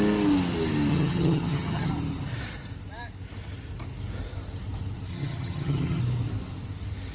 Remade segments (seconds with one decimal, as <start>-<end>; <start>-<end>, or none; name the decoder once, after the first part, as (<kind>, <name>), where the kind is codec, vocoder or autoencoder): 0.9-1.9 (vocoder, HiFi-GAN); 5.1-6.0